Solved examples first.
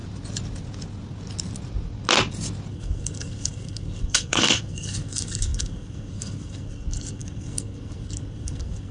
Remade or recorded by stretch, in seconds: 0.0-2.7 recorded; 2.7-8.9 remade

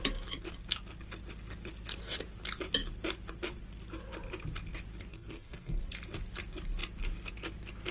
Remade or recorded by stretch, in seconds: 0.0-5.1 recorded; 5.1-5.8 remade; 5.8-7.9 recorded

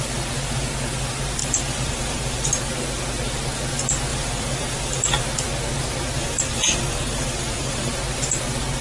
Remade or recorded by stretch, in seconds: 0.0-1.4 recorded; 1.4-2.5 remade; 2.5-4.1 recorded; 4.1-5.2 remade; 5.2-6.2 recorded; 6.2-7.9 remade; 7.9-8.8 recorded

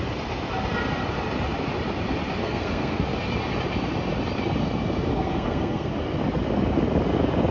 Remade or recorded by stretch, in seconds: 0.0-2.4 recorded; 2.4-3.0 remade; 3.0-5.1 recorded; 5.1-5.9 remade; 5.9-7.5 recorded

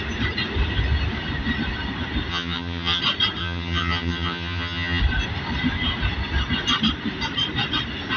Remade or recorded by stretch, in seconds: 0.0-2.3 recorded; 2.3-3.0 remade; 3.0-3.4 recorded; 3.4-5.0 remade; 5.0-8.2 recorded